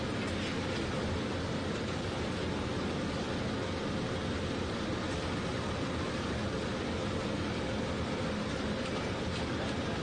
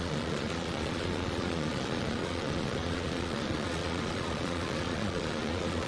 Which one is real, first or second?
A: first